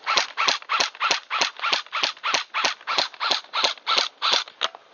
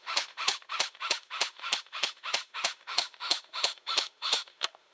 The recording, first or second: first